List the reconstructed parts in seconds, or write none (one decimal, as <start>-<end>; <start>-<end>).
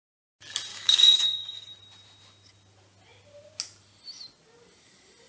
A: 0.7-1.7